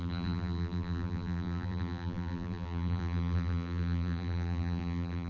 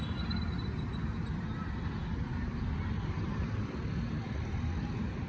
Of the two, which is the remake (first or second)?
first